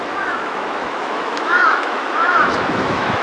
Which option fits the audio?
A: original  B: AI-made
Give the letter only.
B